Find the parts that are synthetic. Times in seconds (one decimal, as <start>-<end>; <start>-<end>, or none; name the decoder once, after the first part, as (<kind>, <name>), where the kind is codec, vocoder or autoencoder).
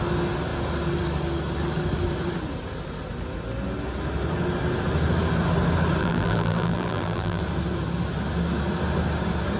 6.0-7.4 (vocoder, BigVGAN v2)